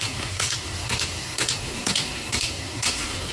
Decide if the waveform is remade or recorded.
remade